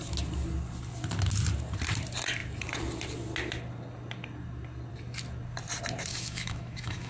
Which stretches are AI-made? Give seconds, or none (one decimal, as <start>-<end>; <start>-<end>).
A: 6.1-7.1